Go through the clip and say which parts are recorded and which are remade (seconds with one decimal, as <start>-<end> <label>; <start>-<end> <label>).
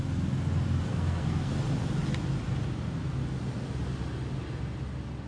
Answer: 0.0-0.9 recorded; 0.9-1.5 remade; 1.5-5.3 recorded